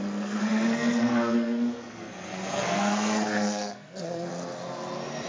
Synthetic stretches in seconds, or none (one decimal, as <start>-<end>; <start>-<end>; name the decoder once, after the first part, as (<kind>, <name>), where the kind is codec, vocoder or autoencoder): 0.0-4.3 (codec, SNAC)